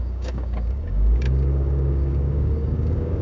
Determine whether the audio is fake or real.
fake